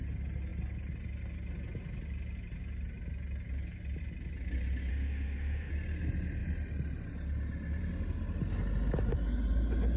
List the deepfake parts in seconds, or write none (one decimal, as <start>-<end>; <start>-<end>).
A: 4.9-5.7